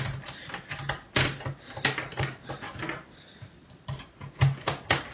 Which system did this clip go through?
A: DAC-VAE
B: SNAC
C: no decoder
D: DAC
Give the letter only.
C